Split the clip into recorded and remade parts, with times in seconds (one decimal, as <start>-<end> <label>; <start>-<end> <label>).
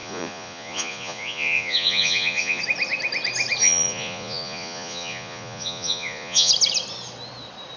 0.0-2.6 remade; 2.6-3.6 recorded; 3.6-6.5 remade; 6.5-7.8 recorded